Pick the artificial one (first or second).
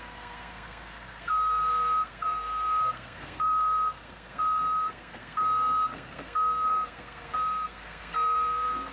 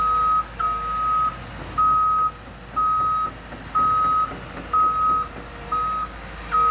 first